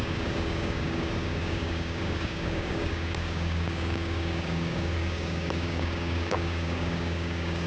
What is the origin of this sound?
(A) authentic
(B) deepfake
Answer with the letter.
B